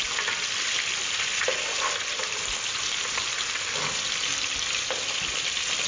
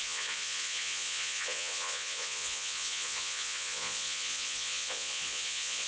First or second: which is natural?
first